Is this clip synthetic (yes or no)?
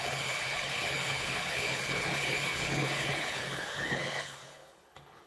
yes